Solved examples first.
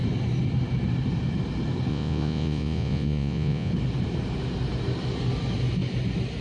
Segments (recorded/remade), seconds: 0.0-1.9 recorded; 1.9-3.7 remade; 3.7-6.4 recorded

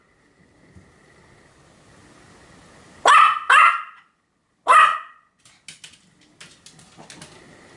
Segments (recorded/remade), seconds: 0.0-4.9 recorded; 4.9-5.4 remade; 5.4-7.8 recorded

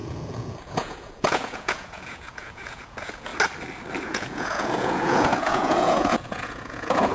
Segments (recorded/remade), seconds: 0.0-3.3 remade; 3.3-4.0 recorded; 4.0-7.1 remade

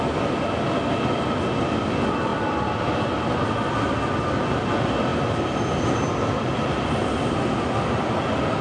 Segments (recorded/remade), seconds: 0.0-8.6 recorded